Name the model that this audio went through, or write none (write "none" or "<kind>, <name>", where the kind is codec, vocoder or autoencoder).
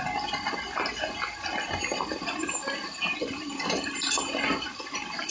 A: none